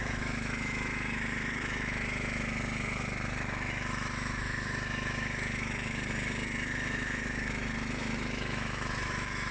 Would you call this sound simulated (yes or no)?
yes